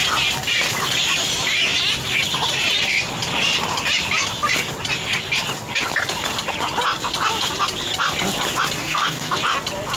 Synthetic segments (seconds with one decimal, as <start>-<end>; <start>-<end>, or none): 8.8-9.4